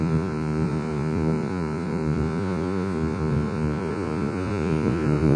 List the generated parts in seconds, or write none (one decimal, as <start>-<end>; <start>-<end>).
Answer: 0.0-5.4